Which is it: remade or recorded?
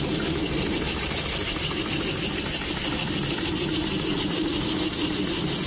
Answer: recorded